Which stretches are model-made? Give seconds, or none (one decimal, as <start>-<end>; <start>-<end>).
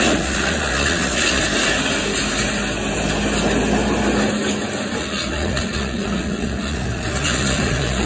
0.0-1.4; 5.0-8.1